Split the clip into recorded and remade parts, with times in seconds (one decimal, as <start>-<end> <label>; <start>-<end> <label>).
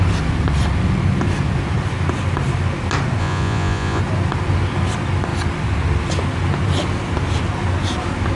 0.0-3.2 recorded; 3.2-4.0 remade; 4.0-8.3 recorded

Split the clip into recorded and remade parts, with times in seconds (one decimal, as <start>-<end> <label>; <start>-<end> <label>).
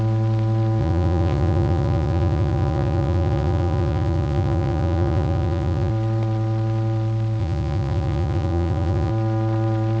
0.0-0.8 recorded; 0.8-5.9 remade; 5.9-7.4 recorded; 7.4-9.1 remade; 9.1-10.0 recorded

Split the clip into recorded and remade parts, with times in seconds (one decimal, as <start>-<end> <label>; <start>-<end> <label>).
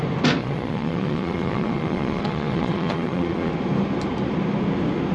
0.0-0.4 recorded; 0.4-3.5 remade; 3.5-5.1 recorded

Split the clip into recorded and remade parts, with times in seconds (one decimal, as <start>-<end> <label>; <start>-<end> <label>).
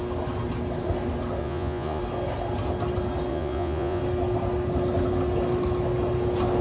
0.0-1.4 recorded; 1.4-2.0 remade; 2.0-3.3 recorded; 3.3-4.0 remade; 4.0-6.6 recorded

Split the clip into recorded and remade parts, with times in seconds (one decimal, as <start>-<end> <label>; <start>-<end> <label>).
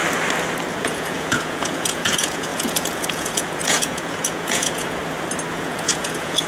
0.0-0.7 recorded; 0.7-5.0 remade; 5.0-5.5 recorded; 5.5-6.5 remade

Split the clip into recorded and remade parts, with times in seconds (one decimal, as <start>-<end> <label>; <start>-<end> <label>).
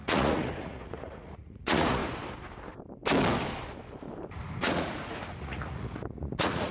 0.0-2.0 remade; 2.0-4.6 recorded; 4.6-6.7 remade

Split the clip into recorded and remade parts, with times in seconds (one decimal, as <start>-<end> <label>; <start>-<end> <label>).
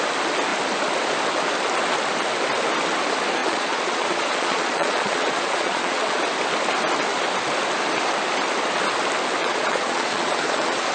0.0-3.4 recorded; 3.4-6.2 remade; 6.2-9.4 recorded; 9.4-10.9 remade